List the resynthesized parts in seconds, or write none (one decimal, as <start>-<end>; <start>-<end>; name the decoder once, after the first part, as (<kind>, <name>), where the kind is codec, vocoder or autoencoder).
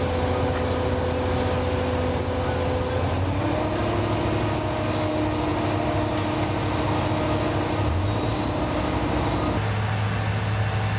none